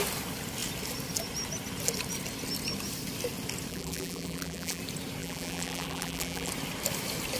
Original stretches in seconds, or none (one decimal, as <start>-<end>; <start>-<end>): 0.0-3.7; 4.8-5.2; 6.5-7.4